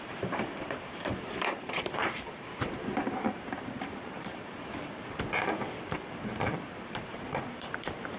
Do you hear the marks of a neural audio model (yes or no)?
yes